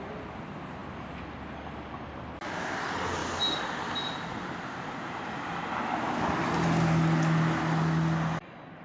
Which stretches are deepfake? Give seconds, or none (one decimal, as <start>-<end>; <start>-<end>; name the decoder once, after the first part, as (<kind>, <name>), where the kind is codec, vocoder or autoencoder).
none